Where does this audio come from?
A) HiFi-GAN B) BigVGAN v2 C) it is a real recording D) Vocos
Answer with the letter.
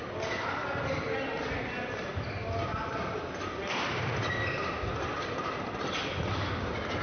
C